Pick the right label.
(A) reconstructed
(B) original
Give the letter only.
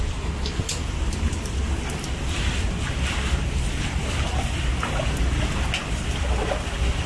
B